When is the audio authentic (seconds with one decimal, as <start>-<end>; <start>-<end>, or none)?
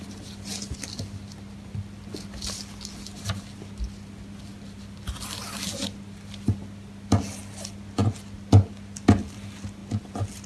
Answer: 0.0-10.5